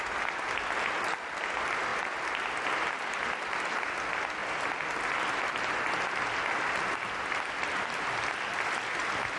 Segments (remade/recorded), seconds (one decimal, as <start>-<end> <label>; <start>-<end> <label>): 0.0-9.4 recorded